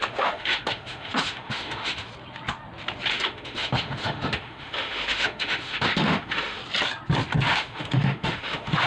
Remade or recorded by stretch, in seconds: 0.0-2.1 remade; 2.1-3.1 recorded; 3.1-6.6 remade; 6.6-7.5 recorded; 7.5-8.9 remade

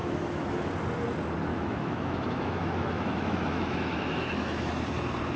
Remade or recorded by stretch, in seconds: 0.0-0.7 remade; 0.7-1.5 recorded; 1.5-4.7 remade; 4.7-5.4 recorded

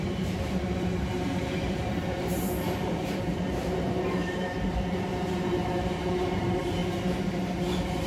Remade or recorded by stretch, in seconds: 0.0-6.8 remade; 6.8-8.1 recorded

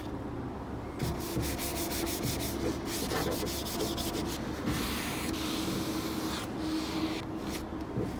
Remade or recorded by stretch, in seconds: 0.0-8.2 recorded

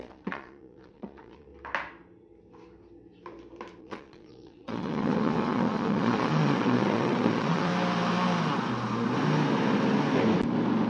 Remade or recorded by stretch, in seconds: 0.0-1.5 remade; 1.5-3.8 recorded; 3.8-7.7 remade; 7.7-10.9 recorded